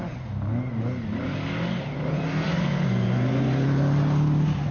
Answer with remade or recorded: recorded